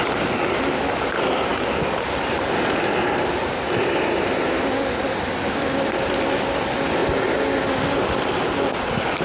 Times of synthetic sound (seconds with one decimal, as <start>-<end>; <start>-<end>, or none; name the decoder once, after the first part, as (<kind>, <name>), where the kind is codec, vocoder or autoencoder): 0.0-1.5 (vocoder, BigVGAN v2); 5.0-7.0; 8.0-9.2